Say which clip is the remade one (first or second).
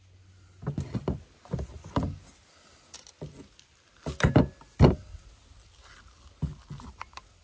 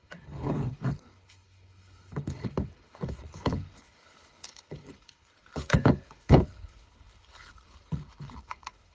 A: second